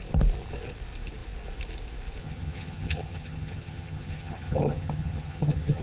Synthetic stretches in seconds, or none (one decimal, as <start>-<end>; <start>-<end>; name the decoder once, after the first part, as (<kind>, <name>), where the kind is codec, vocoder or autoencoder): 2.2-5.8 (vocoder, HiFi-GAN)